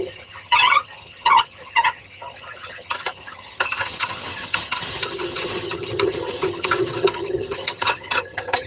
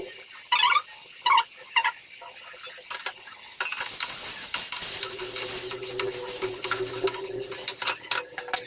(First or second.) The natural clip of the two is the second